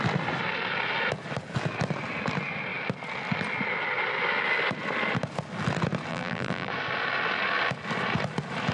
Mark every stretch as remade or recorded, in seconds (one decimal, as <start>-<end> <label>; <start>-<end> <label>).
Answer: 0.0-6.1 recorded; 6.1-6.7 remade; 6.7-8.7 recorded